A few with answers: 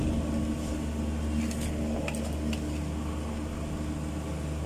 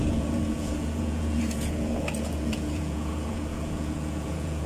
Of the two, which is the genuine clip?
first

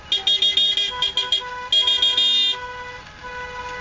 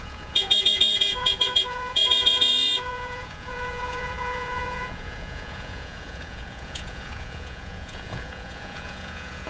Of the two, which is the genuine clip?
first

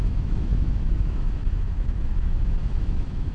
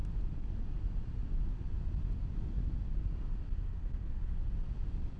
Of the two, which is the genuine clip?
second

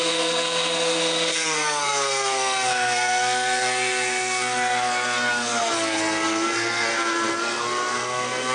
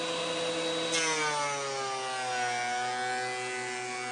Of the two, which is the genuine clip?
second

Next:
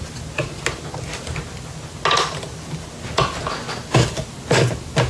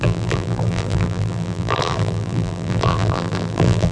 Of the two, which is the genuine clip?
first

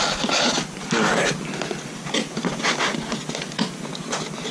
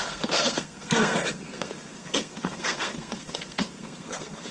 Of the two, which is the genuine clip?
first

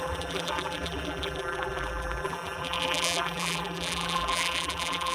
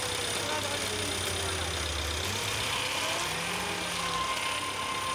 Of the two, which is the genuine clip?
second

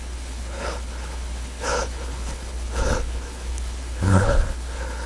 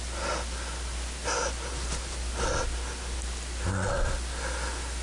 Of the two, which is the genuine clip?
second